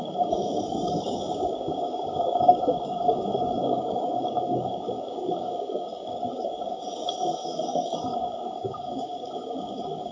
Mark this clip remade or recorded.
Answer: remade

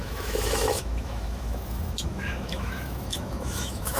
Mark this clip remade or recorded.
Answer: remade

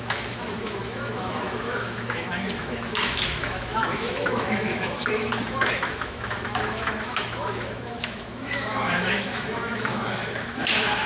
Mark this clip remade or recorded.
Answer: remade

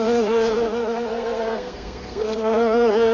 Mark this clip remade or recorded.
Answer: remade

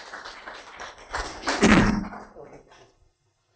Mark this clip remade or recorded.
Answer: recorded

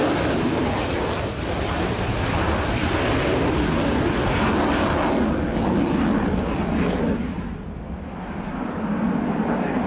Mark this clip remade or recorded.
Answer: recorded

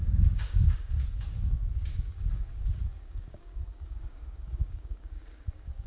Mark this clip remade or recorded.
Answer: remade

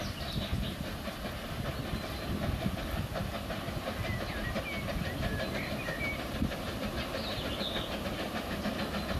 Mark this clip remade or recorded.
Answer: recorded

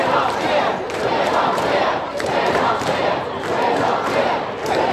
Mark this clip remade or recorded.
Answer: remade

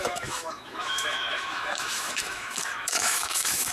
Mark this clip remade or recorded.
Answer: remade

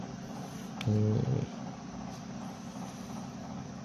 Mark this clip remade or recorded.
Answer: recorded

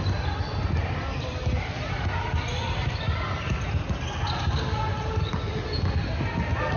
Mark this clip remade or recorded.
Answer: recorded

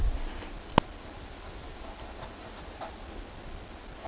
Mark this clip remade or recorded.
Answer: recorded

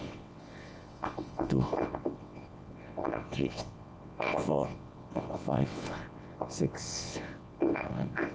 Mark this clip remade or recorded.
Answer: remade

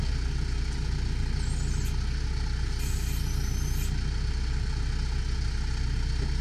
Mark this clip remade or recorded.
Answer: recorded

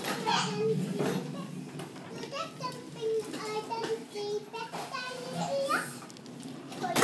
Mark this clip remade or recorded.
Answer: recorded